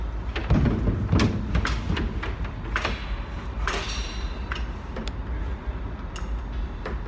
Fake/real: real